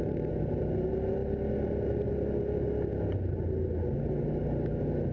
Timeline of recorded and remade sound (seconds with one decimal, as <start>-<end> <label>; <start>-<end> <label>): 0.0-5.1 recorded